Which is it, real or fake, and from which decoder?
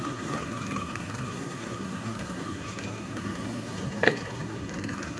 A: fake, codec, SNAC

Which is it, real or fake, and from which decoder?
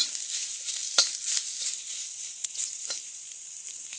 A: fake, vocoder, BigVGAN v2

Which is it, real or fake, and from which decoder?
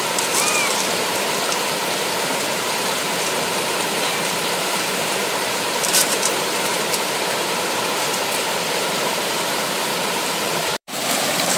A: fake, vocoder, BigVGAN v2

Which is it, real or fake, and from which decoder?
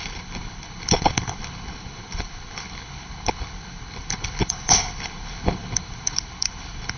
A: fake, codec, HILCodec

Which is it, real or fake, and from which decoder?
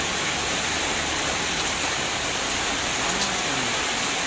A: fake, vocoder, BigVGAN v2